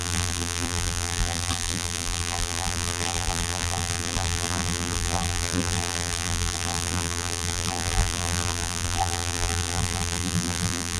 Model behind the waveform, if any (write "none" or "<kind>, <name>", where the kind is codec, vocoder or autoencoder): vocoder, BigVGAN v2